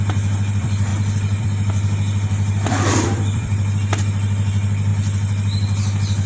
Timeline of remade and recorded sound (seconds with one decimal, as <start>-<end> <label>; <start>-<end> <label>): 0.0-0.9 remade; 0.9-1.4 recorded; 1.4-4.9 remade; 4.9-6.3 recorded

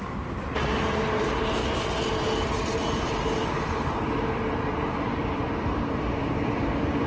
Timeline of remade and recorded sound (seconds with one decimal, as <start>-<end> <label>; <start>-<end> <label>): 0.0-1.6 remade; 1.6-4.3 recorded; 4.3-7.1 remade